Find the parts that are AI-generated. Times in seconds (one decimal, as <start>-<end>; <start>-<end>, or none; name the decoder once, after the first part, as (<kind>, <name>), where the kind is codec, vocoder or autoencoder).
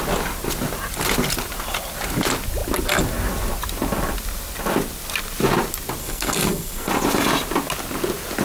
6.0-6.9 (codec, SNAC)